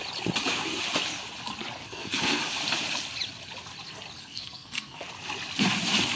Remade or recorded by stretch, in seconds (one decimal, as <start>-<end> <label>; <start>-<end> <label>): 0.0-1.8 recorded; 1.8-2.4 remade; 2.4-4.2 recorded; 4.2-5.1 remade; 5.1-6.2 recorded